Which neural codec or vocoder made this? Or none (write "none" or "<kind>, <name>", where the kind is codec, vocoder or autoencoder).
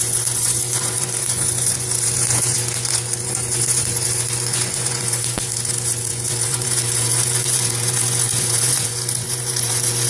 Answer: vocoder, Vocos